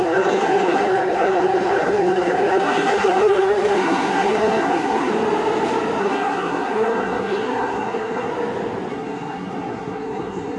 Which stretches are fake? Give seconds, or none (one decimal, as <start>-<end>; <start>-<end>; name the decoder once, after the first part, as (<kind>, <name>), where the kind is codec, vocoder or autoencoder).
0.0-5.1 (codec, SNAC); 6.0-8.3; 8.9-10.6